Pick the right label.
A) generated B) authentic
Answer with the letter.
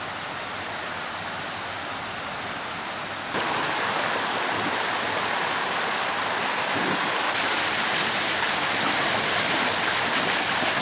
B